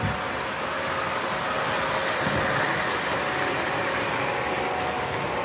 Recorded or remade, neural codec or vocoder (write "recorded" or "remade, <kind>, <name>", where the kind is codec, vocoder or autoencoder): recorded